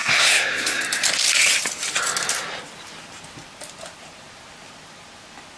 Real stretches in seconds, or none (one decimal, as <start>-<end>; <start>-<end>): 0.8-5.6